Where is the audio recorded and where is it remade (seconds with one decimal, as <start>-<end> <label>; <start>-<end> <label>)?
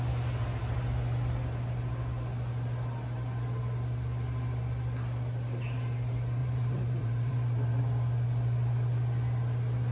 0.0-6.4 recorded; 6.4-7.8 remade; 7.8-9.9 recorded